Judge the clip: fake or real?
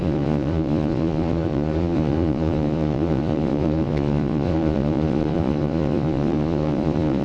fake